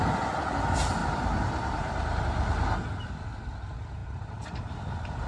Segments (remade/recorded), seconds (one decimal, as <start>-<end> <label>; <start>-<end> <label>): 0.0-1.0 recorded; 1.0-2.2 remade; 2.2-4.0 recorded; 4.0-4.7 remade; 4.7-5.3 recorded